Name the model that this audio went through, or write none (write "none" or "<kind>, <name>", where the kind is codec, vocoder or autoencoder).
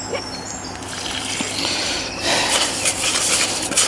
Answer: none